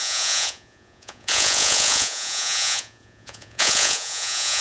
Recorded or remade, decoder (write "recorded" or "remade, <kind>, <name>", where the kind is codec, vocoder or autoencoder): remade, vocoder, Vocos